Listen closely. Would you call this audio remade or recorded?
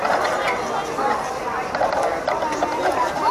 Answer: recorded